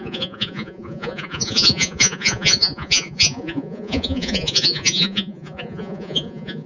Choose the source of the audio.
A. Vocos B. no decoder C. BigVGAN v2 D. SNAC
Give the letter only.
A